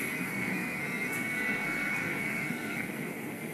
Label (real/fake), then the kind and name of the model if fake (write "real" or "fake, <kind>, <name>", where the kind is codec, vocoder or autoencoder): fake, codec, SNAC